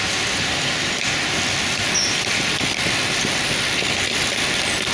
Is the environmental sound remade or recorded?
recorded